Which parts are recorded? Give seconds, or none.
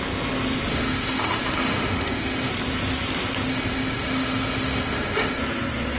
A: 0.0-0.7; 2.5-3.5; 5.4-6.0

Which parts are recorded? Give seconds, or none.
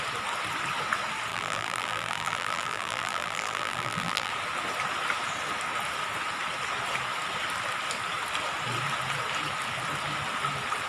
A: 0.0-1.3; 4.3-10.9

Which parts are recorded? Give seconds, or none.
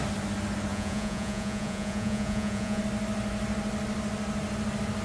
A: 0.0-0.7; 2.8-5.0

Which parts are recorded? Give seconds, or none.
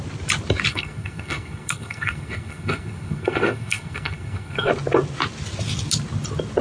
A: 0.0-0.7; 4.7-6.6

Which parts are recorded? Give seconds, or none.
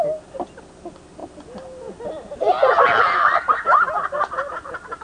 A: 0.0-5.0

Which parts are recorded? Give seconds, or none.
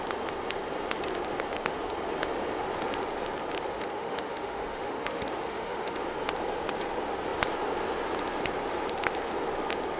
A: 0.0-3.7; 6.0-10.0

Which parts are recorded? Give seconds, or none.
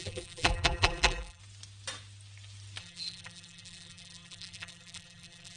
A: 1.4-2.8